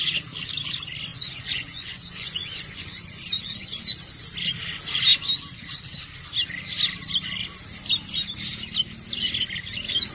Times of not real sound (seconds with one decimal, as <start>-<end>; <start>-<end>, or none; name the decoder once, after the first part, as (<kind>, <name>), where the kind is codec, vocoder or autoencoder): 1.1-3.8 (vocoder, Vocos)